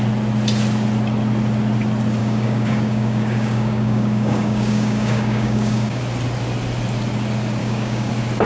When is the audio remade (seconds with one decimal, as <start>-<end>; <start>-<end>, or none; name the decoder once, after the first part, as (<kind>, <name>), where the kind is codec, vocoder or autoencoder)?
2.2-6.0 (codec, DAC); 7.6-8.1